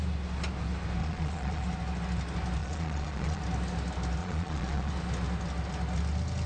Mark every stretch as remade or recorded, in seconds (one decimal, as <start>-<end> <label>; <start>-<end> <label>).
0.0-1.0 recorded; 1.0-1.6 remade; 1.6-2.6 recorded; 2.6-3.4 remade; 3.4-4.2 recorded; 4.2-4.9 remade; 4.9-6.5 recorded